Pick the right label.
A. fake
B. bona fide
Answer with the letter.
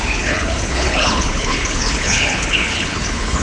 A